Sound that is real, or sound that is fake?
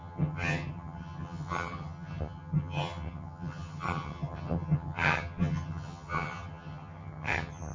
fake